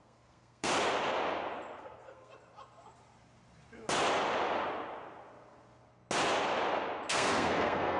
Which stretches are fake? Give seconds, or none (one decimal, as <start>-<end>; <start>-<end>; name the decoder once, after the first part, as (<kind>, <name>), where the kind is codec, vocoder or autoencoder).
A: 0.0-0.7 (codec, SNAC); 1.8-2.3; 7.1-8.0